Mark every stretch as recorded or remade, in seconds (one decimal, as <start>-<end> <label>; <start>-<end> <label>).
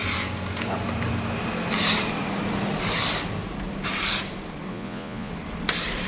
0.0-4.7 recorded; 4.7-5.3 remade; 5.3-6.1 recorded